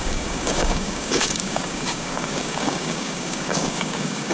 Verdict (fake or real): fake